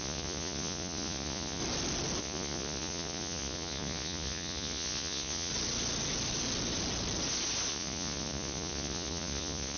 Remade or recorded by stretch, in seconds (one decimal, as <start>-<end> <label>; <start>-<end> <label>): 0.0-1.6 remade; 1.6-2.2 recorded; 2.2-5.5 remade; 5.5-7.7 recorded; 7.7-9.8 remade